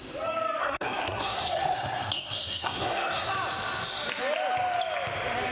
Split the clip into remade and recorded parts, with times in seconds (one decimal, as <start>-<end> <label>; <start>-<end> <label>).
0.0-0.6 recorded; 0.6-3.3 remade; 3.3-5.5 recorded